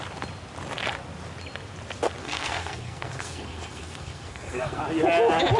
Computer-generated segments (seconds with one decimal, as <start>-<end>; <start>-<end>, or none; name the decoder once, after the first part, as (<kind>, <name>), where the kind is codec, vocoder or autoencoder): 2.2-4.8 (codec, SNAC)